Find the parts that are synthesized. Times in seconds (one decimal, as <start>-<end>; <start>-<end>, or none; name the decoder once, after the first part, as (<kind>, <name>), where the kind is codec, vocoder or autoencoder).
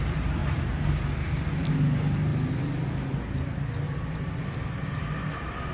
none